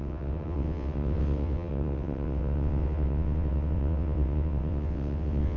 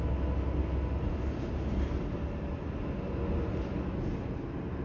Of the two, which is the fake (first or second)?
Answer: first